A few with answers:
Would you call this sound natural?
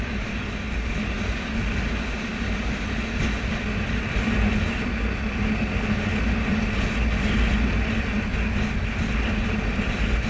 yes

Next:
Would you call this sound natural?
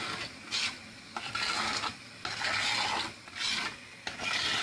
yes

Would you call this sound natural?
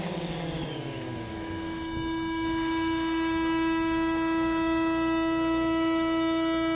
no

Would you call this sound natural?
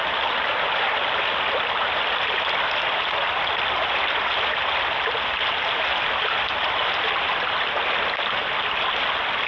yes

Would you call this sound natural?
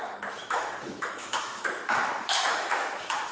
no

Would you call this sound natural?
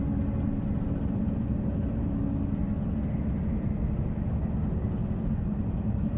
yes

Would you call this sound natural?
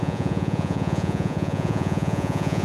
no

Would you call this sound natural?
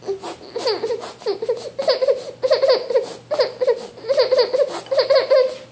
yes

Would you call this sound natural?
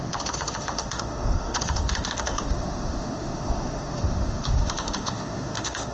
no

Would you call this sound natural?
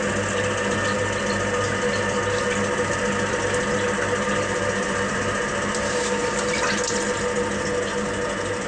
yes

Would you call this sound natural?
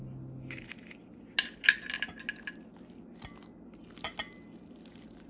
yes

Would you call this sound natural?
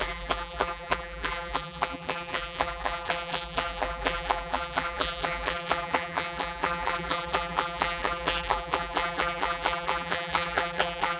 no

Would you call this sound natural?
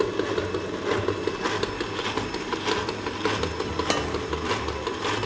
yes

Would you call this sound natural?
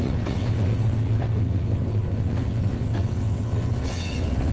no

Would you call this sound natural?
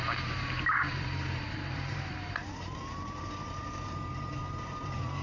no